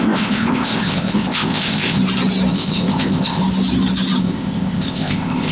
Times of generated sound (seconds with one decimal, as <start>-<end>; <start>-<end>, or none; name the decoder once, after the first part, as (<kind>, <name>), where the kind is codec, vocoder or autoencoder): 0.0-2.0 (codec, ZipCodec); 2.5-3.4; 4.2-5.5